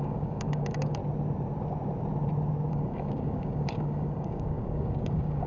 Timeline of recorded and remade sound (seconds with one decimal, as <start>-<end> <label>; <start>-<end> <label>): 0.0-1.0 remade; 1.0-2.7 recorded; 2.7-5.5 remade